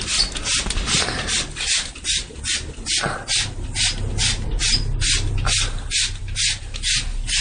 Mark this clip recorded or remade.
recorded